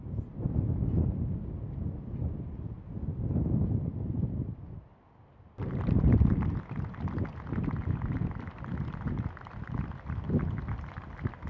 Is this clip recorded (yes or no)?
yes